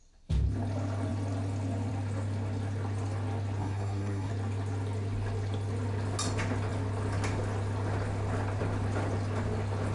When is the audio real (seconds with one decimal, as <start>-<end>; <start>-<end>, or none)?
0.0-3.6; 4.3-9.9